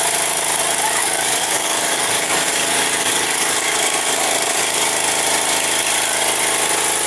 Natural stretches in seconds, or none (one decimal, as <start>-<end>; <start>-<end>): 0.0-1.0; 4.6-7.1